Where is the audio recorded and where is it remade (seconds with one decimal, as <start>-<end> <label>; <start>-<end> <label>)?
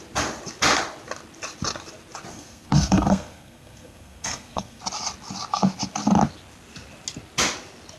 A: 0.0-2.3 recorded; 2.3-4.8 remade; 4.8-8.0 recorded